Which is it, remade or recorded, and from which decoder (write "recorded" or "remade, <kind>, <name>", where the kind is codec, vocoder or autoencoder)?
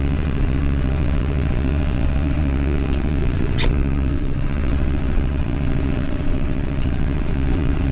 remade, vocoder, WaveNeXt